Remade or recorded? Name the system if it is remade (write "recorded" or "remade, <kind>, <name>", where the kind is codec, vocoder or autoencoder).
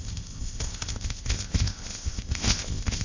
remade, codec, ZipCodec